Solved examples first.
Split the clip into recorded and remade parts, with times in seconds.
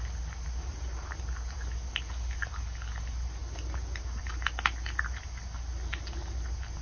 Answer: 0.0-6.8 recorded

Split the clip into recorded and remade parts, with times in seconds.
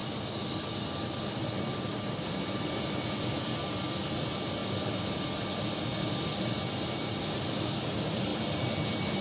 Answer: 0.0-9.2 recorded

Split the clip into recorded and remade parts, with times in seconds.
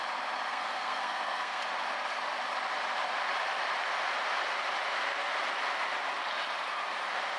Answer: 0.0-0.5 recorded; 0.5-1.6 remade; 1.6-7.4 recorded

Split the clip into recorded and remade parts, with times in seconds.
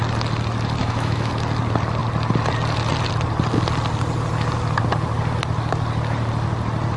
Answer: 0.0-0.8 recorded; 0.8-1.3 remade; 1.3-7.0 recorded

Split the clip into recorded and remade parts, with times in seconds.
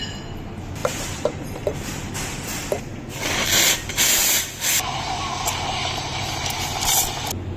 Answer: 0.0-0.8 recorded; 0.8-2.1 remade; 2.1-5.8 recorded; 5.8-6.5 remade; 6.5-7.6 recorded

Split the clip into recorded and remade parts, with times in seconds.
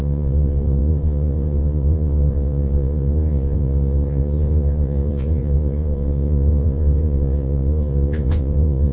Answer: 0.0-8.9 remade